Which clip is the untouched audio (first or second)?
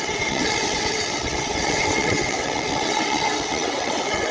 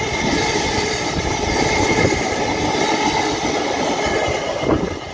second